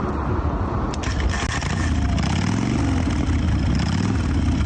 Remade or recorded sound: recorded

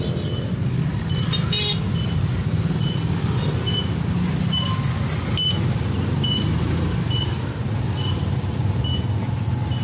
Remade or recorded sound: recorded